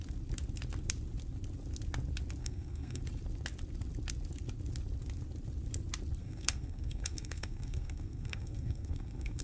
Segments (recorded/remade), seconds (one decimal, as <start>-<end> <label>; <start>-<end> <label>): 0.0-2.4 recorded; 2.4-3.0 remade; 3.0-6.2 recorded; 6.2-9.4 remade